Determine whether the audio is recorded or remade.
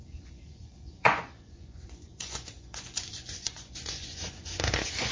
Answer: remade